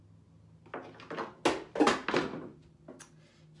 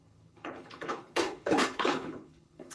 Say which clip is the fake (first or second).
second